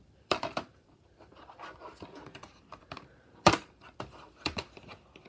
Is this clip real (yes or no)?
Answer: no